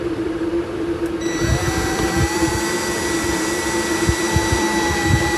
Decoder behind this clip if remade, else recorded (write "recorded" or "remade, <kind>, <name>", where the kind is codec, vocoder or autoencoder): remade, vocoder, BigVGAN v2